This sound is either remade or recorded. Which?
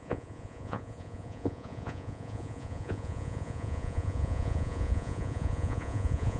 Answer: remade